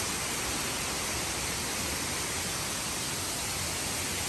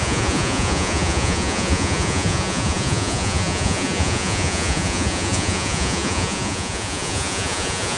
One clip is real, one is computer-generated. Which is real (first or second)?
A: first